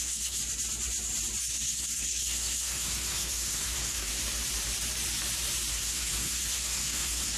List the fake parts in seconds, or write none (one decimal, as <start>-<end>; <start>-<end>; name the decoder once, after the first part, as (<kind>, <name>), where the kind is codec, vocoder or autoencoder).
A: 0.0-0.4 (codec, SNAC); 1.4-4.2; 5.7-7.4